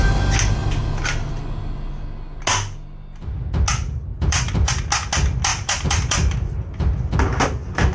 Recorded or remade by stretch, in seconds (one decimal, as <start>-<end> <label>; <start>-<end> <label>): 0.0-4.1 recorded; 4.1-4.7 remade; 4.7-5.5 recorded; 5.5-6.7 remade; 6.7-7.9 recorded